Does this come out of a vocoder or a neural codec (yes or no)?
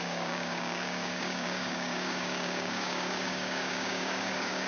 yes